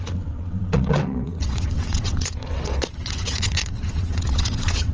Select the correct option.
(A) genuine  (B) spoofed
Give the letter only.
B